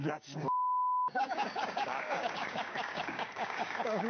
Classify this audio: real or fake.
fake